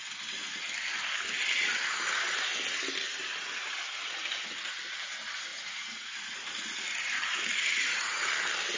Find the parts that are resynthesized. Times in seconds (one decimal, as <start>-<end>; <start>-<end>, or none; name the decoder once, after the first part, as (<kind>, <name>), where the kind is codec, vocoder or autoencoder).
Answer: 5.5-6.2 (vocoder, Vocos); 7.5-8.3